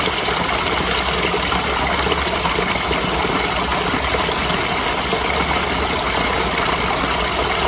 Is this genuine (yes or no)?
yes